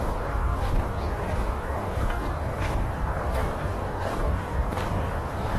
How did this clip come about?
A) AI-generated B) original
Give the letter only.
A